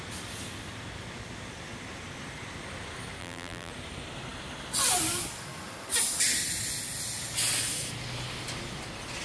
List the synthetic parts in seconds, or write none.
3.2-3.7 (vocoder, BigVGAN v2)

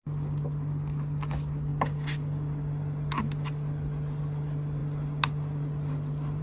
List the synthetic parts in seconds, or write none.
none

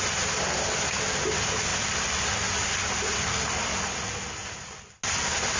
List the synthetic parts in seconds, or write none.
none

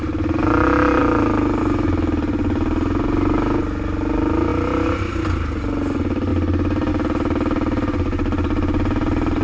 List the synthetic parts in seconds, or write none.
none

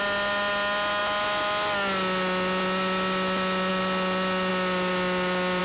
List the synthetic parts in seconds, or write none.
none